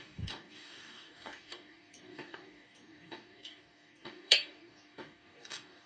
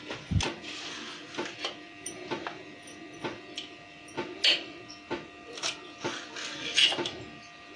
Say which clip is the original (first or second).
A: second